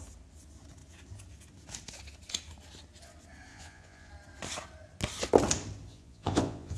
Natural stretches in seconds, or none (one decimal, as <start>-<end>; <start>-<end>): 0.0-3.5; 4.1-5.9